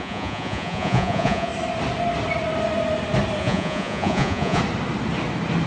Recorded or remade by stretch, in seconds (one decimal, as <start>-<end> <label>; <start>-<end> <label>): 0.0-1.5 remade; 1.5-3.4 recorded; 3.4-4.6 remade; 4.6-5.7 recorded